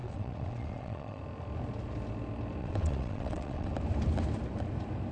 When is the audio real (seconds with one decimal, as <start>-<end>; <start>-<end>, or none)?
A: 1.2-2.6; 3.7-5.1